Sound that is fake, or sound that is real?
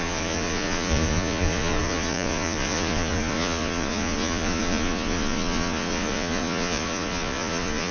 fake